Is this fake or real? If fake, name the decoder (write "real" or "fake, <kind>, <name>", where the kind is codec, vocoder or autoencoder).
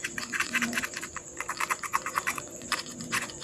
fake, vocoder, Vocos